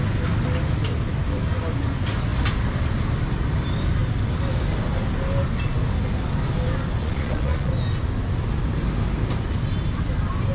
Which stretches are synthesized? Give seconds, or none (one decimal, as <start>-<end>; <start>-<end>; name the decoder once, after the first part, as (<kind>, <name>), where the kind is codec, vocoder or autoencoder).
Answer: 7.0-7.7 (vocoder, Vocos)